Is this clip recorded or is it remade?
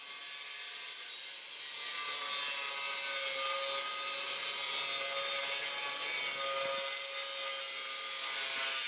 recorded